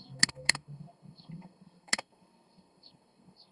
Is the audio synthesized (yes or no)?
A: yes